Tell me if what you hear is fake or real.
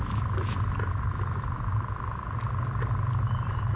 real